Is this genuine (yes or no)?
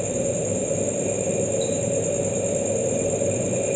yes